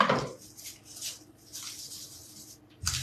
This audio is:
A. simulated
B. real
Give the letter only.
B